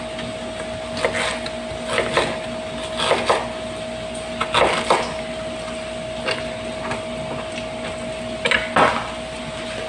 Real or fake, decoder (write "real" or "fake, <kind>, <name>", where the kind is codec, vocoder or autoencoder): real